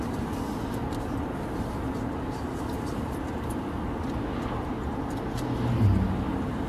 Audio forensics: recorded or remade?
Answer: recorded